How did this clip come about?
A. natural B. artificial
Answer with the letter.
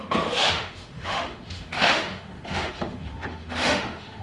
B